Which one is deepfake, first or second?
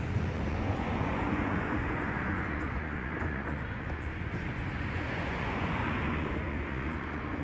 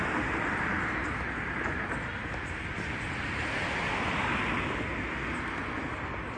first